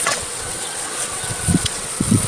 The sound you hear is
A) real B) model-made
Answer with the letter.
B